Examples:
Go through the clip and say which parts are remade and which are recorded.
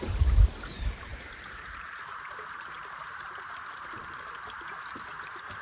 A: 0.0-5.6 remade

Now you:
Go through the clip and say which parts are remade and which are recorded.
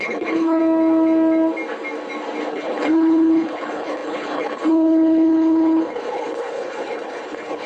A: 0.0-0.6 remade; 0.6-2.5 recorded; 2.5-7.7 remade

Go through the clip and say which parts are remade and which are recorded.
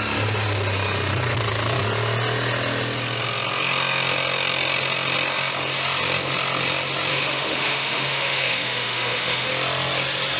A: 0.0-7.1 recorded; 7.1-9.5 remade; 9.5-10.4 recorded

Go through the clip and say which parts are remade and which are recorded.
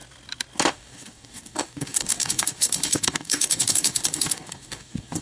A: 0.0-0.7 recorded; 0.7-5.2 remade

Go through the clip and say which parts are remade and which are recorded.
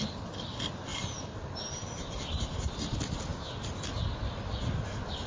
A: 0.0-5.3 recorded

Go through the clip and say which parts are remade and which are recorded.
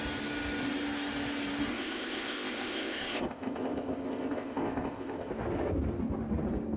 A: 0.0-1.7 recorded; 1.7-5.3 remade; 5.3-6.8 recorded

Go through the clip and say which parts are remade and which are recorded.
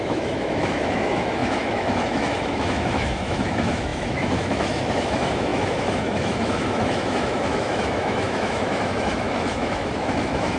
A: 0.0-10.6 remade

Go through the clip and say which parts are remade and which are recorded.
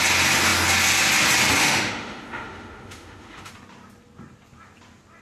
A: 0.0-1.6 recorded; 1.6-3.5 remade; 3.5-5.2 recorded